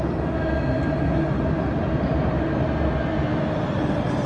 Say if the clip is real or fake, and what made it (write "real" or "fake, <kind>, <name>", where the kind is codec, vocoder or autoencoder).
real